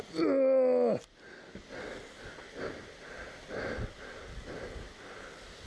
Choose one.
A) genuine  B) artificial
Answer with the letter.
A